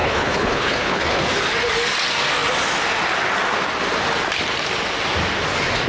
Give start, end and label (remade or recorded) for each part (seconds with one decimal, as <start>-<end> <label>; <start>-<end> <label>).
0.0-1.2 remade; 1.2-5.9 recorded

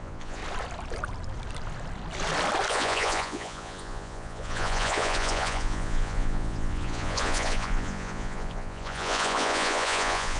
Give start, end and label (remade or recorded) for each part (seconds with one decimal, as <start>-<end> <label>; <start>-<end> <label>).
0.0-0.4 remade; 0.4-2.7 recorded; 2.7-10.4 remade

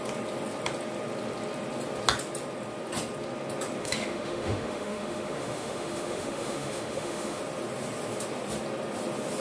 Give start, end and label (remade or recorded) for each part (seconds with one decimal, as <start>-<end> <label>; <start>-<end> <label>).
0.0-3.8 recorded; 3.8-7.4 remade; 7.4-9.4 recorded

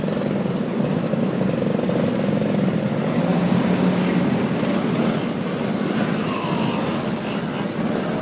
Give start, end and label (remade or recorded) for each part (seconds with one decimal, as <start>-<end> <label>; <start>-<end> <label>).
0.0-0.9 recorded; 0.9-1.7 remade; 1.7-3.3 recorded; 3.3-4.0 remade; 4.0-8.2 recorded

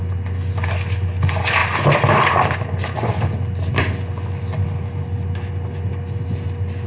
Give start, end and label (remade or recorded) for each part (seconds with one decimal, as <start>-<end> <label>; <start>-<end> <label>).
0.0-6.9 recorded